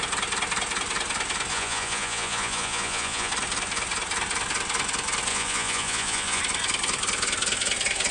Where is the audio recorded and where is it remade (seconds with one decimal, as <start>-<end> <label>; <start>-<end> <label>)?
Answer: 0.0-1.5 recorded; 1.5-3.3 remade; 3.3-5.3 recorded; 5.3-6.4 remade; 6.4-8.1 recorded